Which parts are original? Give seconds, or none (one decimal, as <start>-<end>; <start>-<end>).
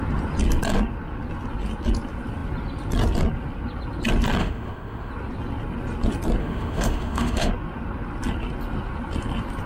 0.0-4.4; 5.1-6.4; 7.5-9.7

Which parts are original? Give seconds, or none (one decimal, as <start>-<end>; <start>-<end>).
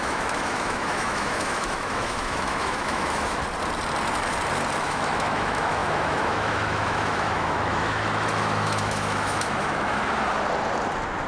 3.4-4.8; 10.0-11.3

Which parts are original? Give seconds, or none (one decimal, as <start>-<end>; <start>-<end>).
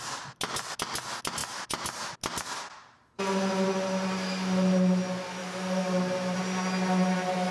0.0-5.4; 6.4-7.5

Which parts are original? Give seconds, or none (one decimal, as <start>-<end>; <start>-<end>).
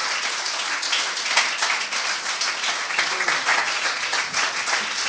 0.0-3.5; 4.6-5.1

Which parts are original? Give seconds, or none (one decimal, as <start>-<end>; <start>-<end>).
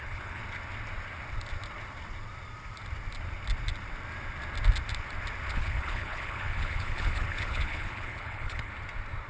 0.4-5.5; 8.7-9.3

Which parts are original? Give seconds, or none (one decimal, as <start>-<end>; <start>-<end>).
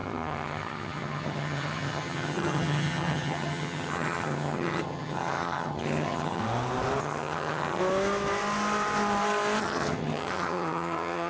6.4-7.0; 7.8-9.6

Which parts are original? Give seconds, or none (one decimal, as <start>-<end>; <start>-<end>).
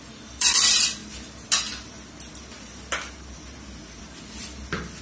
1.0-4.0